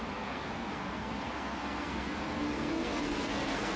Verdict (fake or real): fake